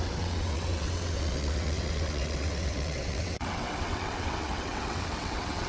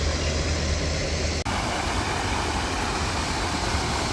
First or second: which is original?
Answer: second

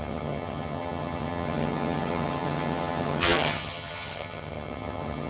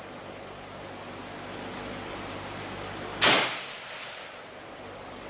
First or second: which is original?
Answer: second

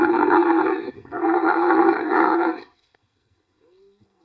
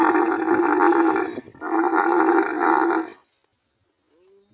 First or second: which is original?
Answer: second